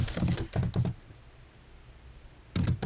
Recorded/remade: recorded